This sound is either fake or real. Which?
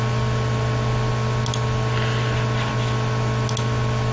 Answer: real